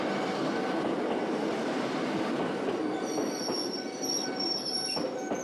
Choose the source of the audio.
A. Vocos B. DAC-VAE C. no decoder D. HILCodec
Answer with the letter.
C